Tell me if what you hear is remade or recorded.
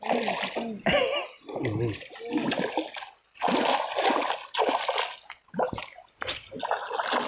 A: recorded